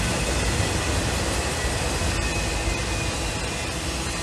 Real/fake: real